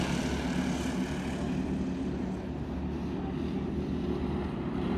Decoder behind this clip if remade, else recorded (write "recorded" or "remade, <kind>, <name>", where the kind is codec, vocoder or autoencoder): recorded